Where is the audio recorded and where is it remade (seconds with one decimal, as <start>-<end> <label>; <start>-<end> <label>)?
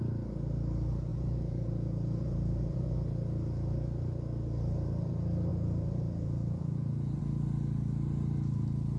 0.0-1.1 recorded; 1.1-2.9 remade; 2.9-5.5 recorded; 5.5-7.2 remade; 7.2-9.0 recorded